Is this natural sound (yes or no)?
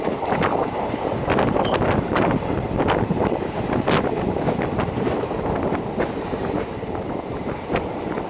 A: no